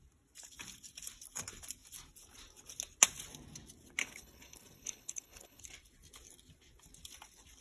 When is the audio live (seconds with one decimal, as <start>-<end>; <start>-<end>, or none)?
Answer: 0.0-4.0; 5.6-7.6